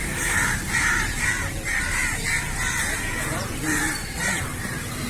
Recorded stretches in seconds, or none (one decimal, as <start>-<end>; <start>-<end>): none